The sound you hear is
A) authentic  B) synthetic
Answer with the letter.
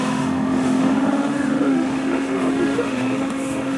B